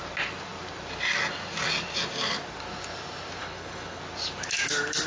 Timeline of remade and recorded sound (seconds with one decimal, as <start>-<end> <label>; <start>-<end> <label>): 0.0-3.4 recorded; 3.4-4.0 remade; 4.0-5.1 recorded